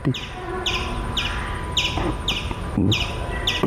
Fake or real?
real